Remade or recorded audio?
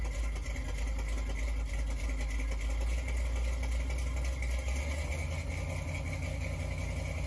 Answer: recorded